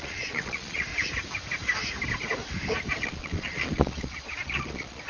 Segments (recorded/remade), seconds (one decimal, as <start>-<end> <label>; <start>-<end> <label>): 0.0-0.9 remade; 0.9-3.0 recorded; 3.0-5.1 remade